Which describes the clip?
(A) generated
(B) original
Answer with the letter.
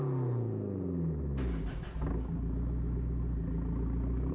B